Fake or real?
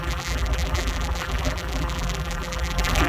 fake